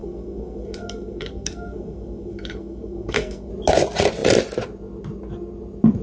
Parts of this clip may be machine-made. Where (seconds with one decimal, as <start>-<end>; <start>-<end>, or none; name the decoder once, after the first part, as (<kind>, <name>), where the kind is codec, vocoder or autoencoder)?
0.0-3.5 (codec, SNAC)